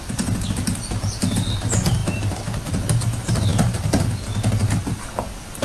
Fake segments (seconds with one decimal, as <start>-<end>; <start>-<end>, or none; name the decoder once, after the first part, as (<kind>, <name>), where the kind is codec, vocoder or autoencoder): none